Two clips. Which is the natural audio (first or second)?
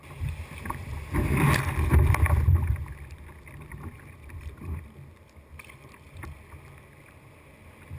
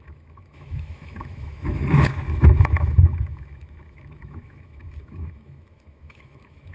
first